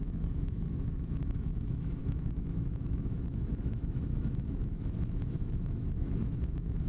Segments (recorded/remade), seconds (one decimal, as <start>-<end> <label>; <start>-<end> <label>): 0.0-6.9 remade

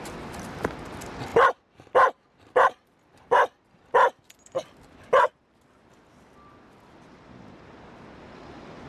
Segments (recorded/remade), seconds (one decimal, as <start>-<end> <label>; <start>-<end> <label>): 0.0-8.9 recorded